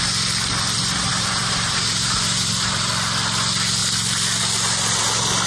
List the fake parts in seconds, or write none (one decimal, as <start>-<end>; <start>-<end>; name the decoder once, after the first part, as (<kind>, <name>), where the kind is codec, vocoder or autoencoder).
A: 1.1-2.9 (vocoder, BigVGAN v2)